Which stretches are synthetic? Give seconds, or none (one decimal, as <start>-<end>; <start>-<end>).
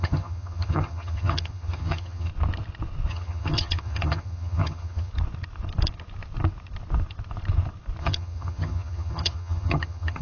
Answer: 0.0-2.3; 3.1-5.1; 8.0-10.2